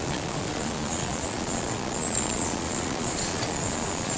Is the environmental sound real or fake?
fake